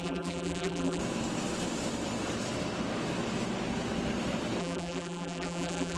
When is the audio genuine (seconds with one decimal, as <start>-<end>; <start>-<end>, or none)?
1.0-4.6